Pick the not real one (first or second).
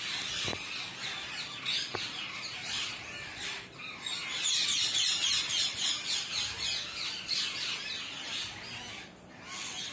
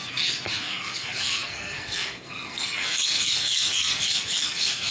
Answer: second